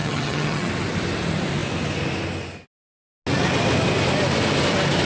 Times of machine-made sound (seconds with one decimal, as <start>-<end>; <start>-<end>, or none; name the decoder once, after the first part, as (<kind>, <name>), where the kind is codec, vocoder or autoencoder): 0.0-0.7 (vocoder, HiFi-GAN)